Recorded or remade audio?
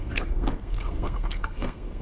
remade